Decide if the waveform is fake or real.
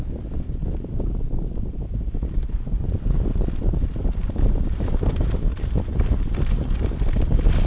fake